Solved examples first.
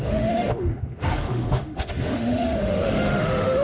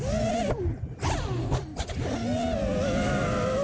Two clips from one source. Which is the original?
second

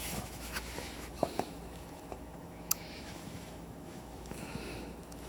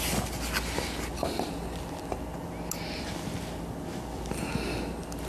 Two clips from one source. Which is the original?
second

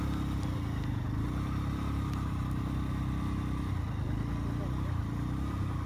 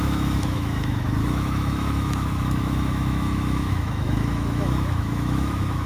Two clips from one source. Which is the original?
first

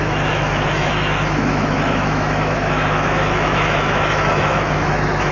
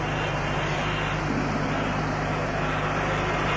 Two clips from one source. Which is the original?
second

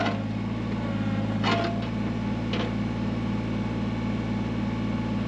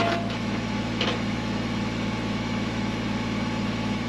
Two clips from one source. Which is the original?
first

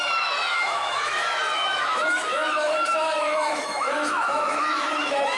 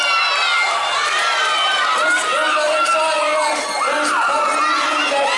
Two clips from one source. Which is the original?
second